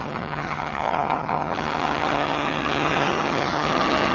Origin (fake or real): fake